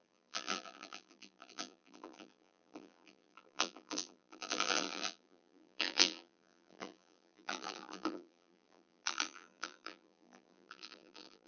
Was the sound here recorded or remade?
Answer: remade